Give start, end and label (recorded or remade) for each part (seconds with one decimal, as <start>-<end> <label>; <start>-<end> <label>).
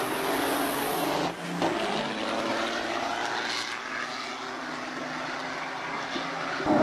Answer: 0.0-2.5 recorded; 2.5-3.1 remade; 3.1-6.8 recorded